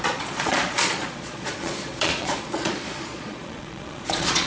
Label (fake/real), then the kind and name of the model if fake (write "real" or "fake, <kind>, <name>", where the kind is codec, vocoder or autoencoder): fake, vocoder, Vocos